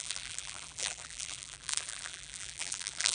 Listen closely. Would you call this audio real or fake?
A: fake